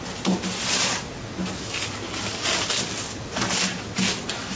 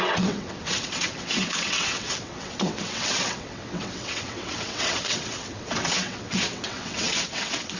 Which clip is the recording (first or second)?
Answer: first